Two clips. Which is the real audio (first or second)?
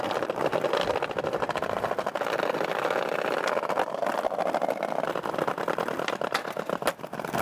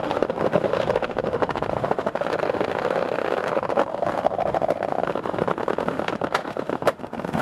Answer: first